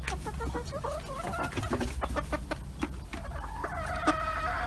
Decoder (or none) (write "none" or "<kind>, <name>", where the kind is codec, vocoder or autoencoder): none